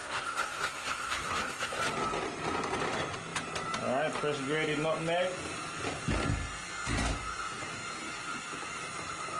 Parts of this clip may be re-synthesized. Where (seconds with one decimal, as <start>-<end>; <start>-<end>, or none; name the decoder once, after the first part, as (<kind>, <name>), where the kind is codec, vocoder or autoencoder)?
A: 0.0-1.8 (codec, SNAC)